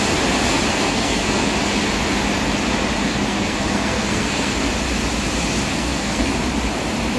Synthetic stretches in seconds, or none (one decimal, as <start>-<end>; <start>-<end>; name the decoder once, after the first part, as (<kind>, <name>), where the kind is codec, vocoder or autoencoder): 0.7-1.5 (codec, SNAC); 3.0-4.7; 5.7-6.3